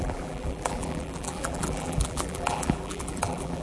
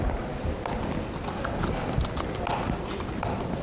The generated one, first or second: first